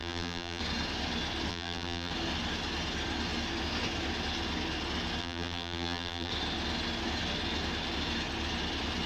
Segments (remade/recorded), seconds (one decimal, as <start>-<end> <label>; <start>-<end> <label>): 0.0-0.6 remade; 0.6-1.5 recorded; 1.5-2.1 remade; 2.1-5.2 recorded; 5.2-6.3 remade; 6.3-9.1 recorded